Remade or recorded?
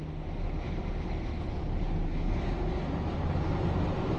recorded